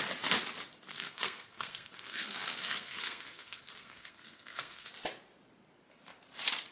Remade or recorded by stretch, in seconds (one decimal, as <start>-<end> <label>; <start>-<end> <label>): 0.0-0.9 recorded; 0.9-4.9 remade; 4.9-6.7 recorded

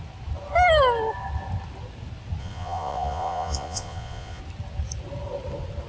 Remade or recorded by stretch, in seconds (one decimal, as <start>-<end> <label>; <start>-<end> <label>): 0.0-2.4 recorded; 2.4-4.4 remade; 4.4-5.9 recorded